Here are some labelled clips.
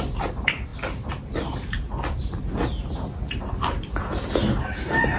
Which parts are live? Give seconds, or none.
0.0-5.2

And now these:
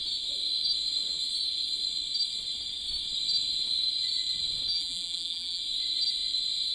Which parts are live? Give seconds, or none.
0.0-4.7; 5.6-6.7

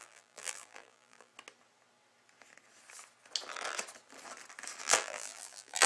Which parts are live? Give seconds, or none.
1.3-4.8

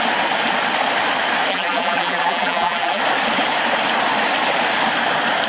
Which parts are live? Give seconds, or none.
0.0-1.5; 3.0-5.5